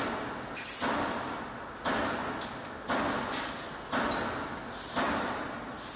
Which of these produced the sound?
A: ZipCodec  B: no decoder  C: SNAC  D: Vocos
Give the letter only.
B